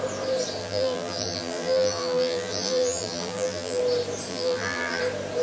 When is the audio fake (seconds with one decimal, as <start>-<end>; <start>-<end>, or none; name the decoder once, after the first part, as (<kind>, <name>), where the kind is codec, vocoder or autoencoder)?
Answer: 0.6-3.8 (vocoder, BigVGAN v2); 4.3-5.0